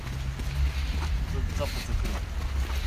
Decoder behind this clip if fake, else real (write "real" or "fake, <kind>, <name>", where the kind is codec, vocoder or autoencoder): real